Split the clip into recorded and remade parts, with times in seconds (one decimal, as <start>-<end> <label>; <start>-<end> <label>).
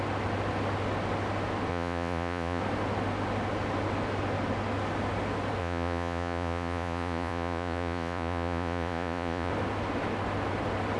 0.0-1.7 recorded; 1.7-2.6 remade; 2.6-5.6 recorded; 5.6-9.5 remade; 9.5-11.0 recorded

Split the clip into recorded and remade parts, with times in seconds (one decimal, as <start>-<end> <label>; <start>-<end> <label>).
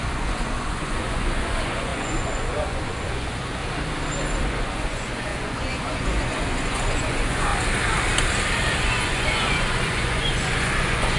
0.0-3.6 remade; 3.6-4.4 recorded; 4.4-7.5 remade; 7.5-8.8 recorded; 8.8-11.2 remade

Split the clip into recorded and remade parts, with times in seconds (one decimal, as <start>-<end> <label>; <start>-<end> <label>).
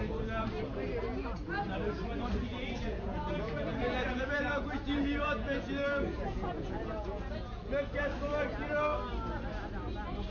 0.0-2.5 recorded; 2.5-7.8 remade; 7.8-10.3 recorded